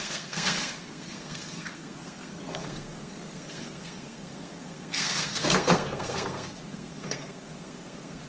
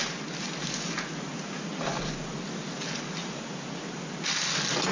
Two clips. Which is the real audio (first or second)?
second